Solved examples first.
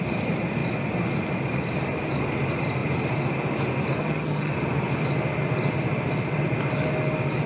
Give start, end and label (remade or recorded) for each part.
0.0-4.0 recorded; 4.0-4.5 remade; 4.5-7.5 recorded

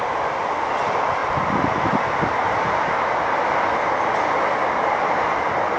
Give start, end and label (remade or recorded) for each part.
0.0-5.8 recorded

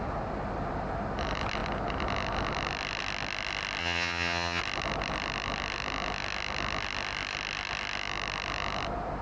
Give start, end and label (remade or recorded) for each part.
0.0-3.8 recorded; 3.8-4.6 remade; 4.6-9.2 recorded

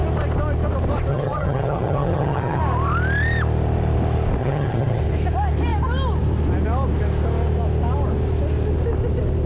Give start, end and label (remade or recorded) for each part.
0.0-1.1 recorded; 1.1-2.6 remade; 2.6-4.4 recorded; 4.4-5.0 remade; 5.0-9.5 recorded

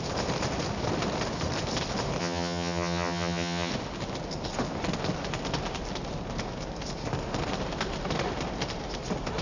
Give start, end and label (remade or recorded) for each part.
0.0-2.2 recorded; 2.2-3.7 remade; 3.7-9.4 recorded

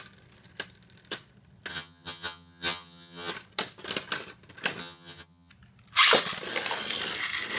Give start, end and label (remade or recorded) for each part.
0.0-1.7 recorded; 1.7-3.3 remade; 3.3-4.8 recorded; 4.8-5.5 remade; 5.5-7.6 recorded

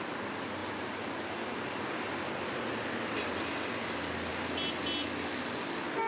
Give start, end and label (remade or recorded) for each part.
0.0-6.1 recorded